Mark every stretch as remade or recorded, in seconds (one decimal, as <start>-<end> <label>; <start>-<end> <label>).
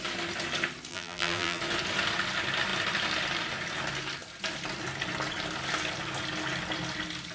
0.0-0.9 recorded; 0.9-1.6 remade; 1.6-7.3 recorded